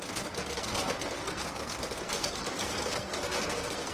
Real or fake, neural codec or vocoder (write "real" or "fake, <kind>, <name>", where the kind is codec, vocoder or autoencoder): fake, codec, SNAC